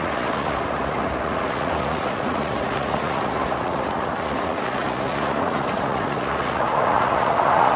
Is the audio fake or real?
fake